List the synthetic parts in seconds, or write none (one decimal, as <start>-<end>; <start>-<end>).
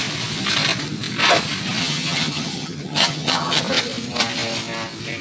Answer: 1.8-3.6